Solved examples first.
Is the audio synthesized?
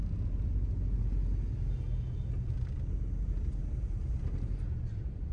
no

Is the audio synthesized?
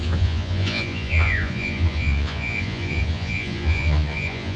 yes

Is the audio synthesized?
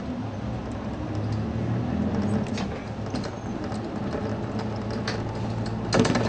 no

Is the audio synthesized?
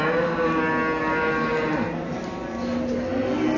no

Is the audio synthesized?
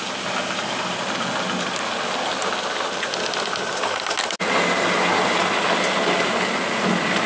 no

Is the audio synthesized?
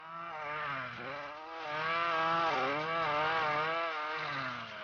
no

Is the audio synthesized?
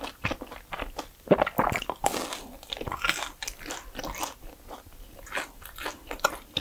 no